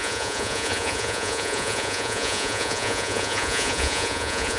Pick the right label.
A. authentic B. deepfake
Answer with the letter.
B